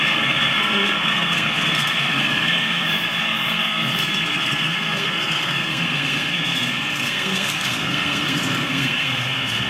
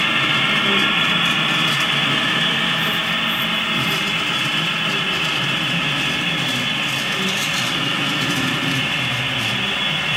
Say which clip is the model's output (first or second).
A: first